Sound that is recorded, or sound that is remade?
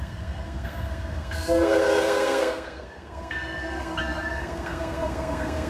remade